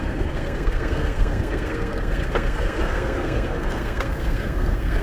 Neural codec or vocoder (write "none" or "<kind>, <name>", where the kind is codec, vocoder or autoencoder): codec, SNAC